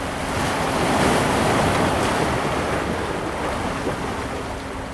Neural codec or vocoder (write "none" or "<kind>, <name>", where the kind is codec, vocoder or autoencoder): none